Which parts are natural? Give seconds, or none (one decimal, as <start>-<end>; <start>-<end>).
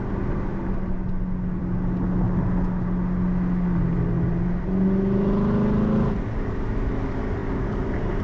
0.0-8.2